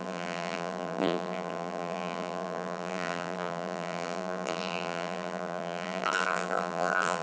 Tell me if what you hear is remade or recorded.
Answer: remade